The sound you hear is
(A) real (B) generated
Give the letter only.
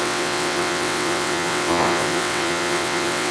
B